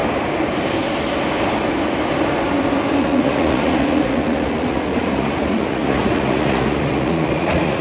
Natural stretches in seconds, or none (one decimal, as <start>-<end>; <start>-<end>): 0.0-3.0